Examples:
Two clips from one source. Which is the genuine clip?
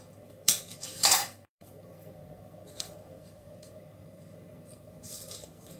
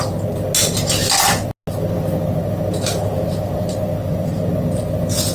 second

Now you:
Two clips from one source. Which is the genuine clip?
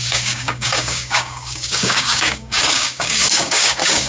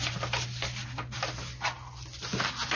second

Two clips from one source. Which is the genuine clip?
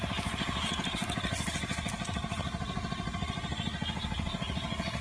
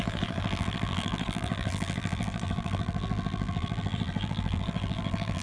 first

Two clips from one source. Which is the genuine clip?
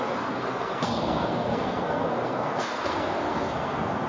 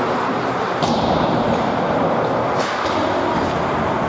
second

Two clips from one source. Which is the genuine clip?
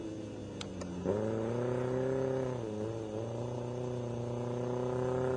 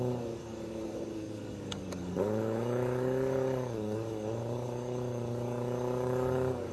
first